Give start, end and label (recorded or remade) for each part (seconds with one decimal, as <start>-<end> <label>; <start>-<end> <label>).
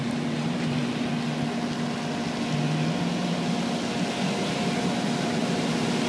0.0-1.1 remade; 1.1-4.8 recorded; 4.8-6.1 remade